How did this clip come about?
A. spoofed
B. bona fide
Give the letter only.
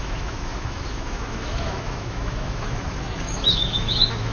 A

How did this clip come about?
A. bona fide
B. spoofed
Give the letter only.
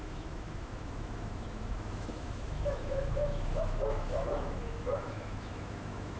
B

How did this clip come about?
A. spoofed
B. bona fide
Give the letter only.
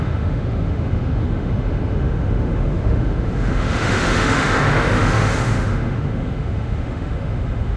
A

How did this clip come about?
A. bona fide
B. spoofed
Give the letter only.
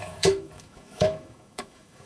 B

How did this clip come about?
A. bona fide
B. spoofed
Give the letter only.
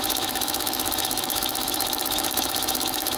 B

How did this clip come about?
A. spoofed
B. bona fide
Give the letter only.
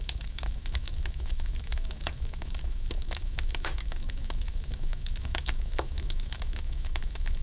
A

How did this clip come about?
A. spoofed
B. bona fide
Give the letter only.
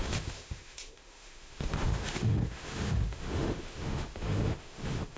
A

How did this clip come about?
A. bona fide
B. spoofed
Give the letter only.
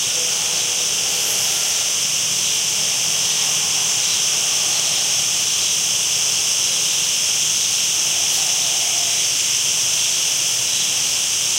A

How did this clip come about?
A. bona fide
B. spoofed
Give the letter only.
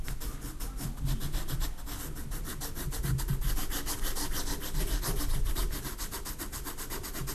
A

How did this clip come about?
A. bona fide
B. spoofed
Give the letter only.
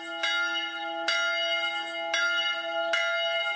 A